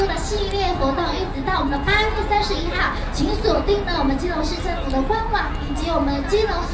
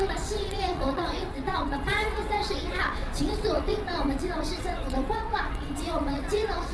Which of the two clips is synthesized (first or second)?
second